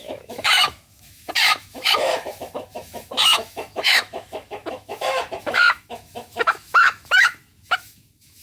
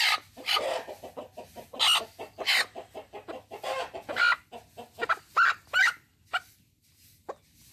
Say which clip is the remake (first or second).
first